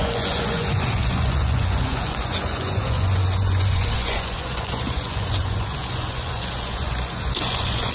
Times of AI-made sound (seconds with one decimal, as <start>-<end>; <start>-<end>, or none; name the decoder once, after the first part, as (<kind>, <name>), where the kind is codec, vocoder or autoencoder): 0.0-7.9 (vocoder, Vocos)